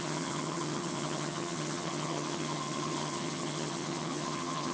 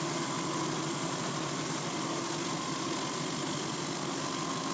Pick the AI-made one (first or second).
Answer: first